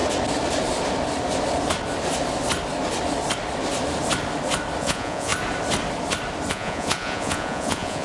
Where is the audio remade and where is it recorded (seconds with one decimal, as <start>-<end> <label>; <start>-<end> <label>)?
0.0-4.8 recorded; 4.8-5.3 remade; 5.3-6.5 recorded; 6.5-8.0 remade